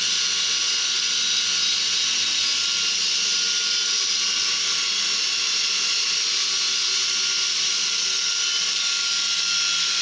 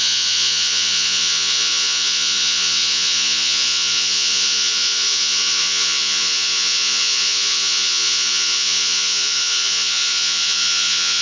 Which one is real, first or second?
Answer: first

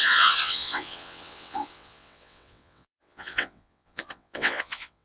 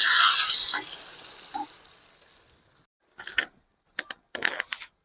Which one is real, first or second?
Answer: second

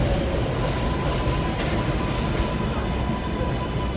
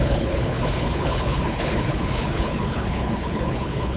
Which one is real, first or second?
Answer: first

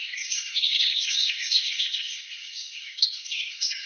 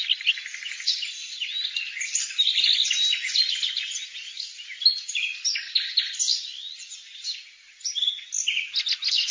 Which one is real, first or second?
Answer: second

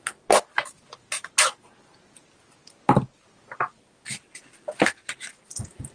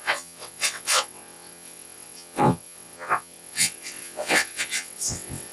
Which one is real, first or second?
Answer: first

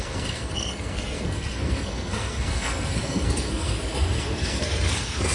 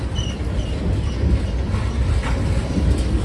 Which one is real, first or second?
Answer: second